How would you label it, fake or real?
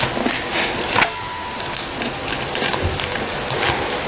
real